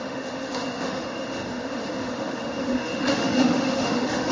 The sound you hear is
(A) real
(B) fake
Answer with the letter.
B